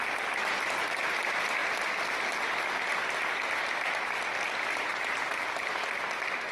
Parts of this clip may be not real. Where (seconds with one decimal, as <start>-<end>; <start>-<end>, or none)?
none